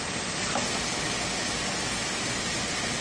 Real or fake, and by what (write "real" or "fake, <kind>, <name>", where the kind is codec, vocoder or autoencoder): real